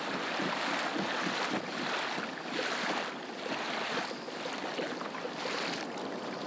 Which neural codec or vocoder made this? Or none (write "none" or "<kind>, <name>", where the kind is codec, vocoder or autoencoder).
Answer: none